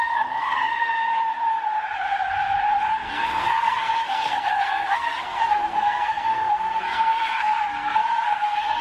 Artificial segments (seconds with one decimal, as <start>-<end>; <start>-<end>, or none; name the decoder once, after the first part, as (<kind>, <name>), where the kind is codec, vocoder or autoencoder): 0.0-1.0 (codec, SNAC); 2.9-8.8